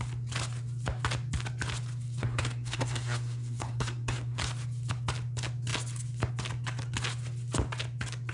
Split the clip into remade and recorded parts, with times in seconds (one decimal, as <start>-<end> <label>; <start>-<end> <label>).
0.0-2.2 recorded; 2.2-4.4 remade; 4.4-8.3 recorded